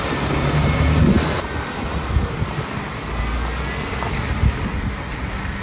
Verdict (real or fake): real